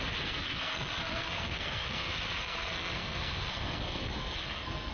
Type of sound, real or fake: fake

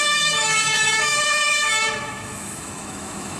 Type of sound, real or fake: fake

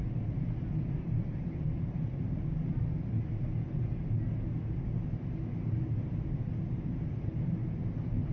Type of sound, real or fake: real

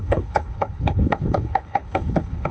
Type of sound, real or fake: fake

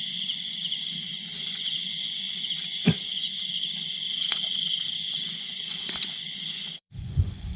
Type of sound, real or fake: fake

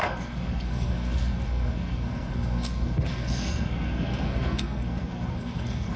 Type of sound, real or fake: fake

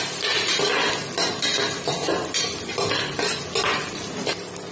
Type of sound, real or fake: real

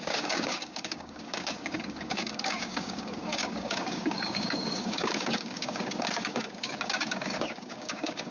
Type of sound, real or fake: fake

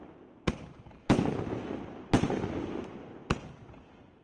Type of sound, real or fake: real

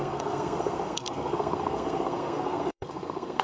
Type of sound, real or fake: fake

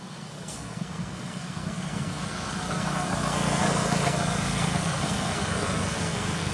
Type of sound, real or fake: fake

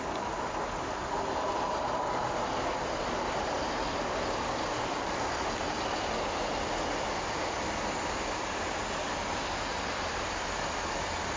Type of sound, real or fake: real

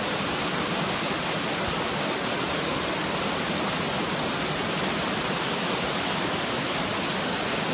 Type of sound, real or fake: real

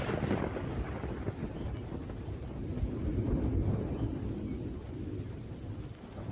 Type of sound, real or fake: real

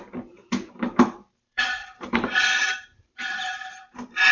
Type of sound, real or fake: fake